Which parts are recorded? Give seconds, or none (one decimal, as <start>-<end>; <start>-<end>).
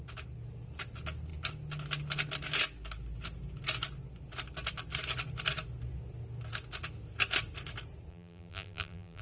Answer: 0.0-8.1